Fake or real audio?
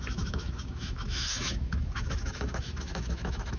fake